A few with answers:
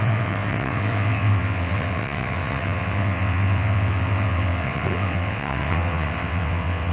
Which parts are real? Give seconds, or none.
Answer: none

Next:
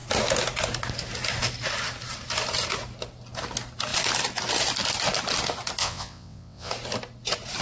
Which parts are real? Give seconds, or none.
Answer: 0.0-5.8; 6.7-7.6

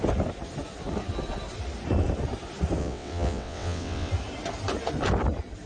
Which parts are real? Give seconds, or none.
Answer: 0.0-2.8; 4.1-5.7